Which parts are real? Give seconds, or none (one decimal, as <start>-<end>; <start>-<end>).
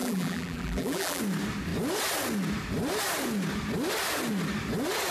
1.2-5.1